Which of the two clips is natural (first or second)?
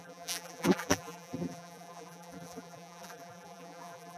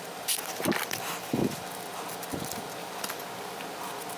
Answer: second